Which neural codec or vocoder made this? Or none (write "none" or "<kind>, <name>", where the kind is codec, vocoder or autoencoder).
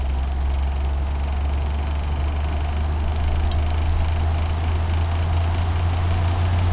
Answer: none